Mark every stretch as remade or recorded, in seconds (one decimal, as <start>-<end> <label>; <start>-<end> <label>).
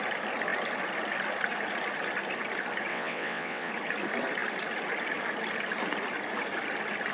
0.0-2.9 recorded; 2.9-3.7 remade; 3.7-7.1 recorded